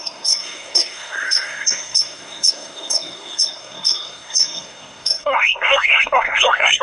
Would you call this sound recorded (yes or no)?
no